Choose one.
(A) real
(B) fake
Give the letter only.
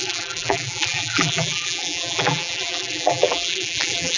B